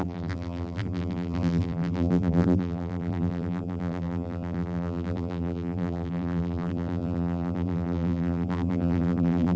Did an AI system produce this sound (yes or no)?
yes